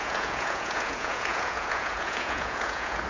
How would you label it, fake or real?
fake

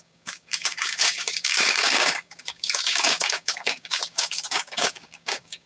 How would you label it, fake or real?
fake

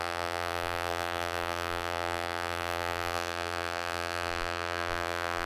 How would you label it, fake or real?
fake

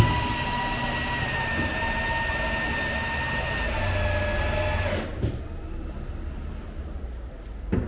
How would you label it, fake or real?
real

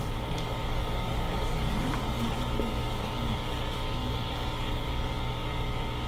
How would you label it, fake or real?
fake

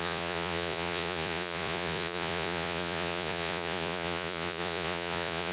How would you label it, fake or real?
fake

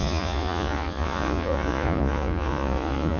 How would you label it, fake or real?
fake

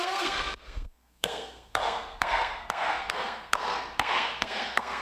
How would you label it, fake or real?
fake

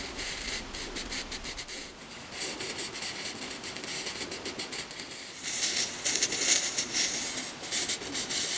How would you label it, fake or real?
real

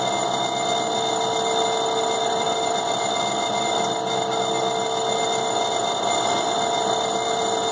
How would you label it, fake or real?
real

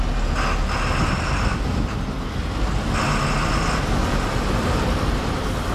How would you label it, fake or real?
real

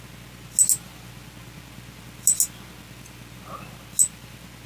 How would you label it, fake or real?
real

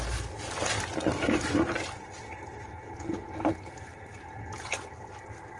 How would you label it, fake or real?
real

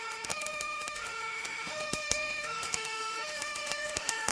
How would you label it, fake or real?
fake